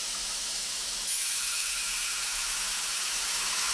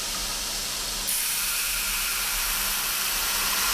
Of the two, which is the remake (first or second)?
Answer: first